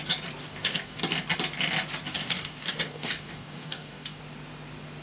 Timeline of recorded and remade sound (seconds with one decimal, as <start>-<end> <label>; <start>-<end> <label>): 0.0-0.4 recorded; 0.4-1.0 remade; 1.0-2.1 recorded; 2.1-4.2 remade; 4.2-5.0 recorded